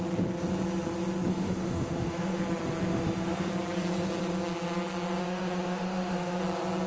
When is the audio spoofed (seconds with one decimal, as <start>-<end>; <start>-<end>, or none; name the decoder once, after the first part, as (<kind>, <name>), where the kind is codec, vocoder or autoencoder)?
1.3-2.4 (autoencoder, DAC-VAE); 2.9-3.5; 5.2-6.4